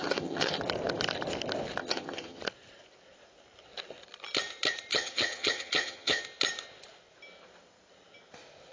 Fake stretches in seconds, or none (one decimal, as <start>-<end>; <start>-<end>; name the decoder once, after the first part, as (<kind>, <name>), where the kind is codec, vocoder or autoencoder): 0.0-0.6 (vocoder, HiFi-GAN); 1.8-2.4; 4.9-6.2